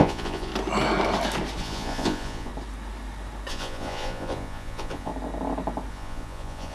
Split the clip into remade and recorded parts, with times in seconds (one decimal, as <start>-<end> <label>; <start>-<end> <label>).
0.0-0.5 remade; 0.5-1.6 recorded; 1.6-2.5 remade; 2.5-3.5 recorded; 3.5-5.1 remade; 5.1-5.9 recorded; 5.9-6.7 remade